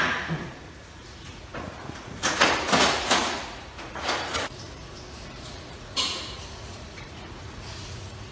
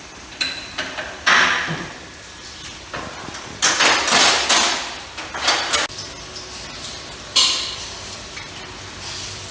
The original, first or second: second